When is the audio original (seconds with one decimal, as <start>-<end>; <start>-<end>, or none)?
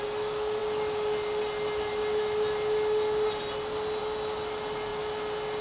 0.0-5.6